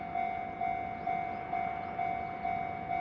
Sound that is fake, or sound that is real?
real